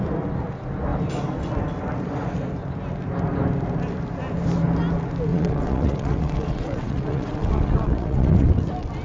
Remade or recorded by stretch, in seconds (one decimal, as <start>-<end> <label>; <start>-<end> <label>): 0.0-5.3 recorded; 5.3-8.5 remade; 8.5-9.0 recorded